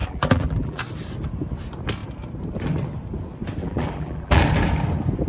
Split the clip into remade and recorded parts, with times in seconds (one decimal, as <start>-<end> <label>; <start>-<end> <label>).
0.0-0.8 remade; 0.8-3.6 recorded; 3.6-4.4 remade; 4.4-5.3 recorded